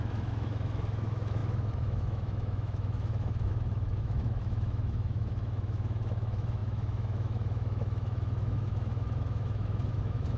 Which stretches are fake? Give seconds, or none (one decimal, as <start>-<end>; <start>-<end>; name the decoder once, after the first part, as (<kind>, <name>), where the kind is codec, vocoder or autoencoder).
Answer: 0.0-10.4 (autoencoder, DAC-VAE)